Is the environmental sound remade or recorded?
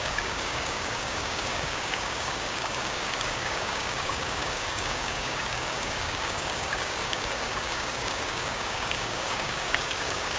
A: remade